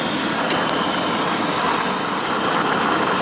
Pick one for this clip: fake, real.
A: real